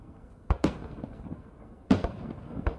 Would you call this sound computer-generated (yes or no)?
yes